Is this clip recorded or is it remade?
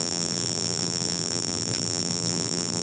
remade